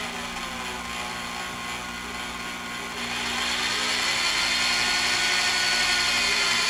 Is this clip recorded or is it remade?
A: recorded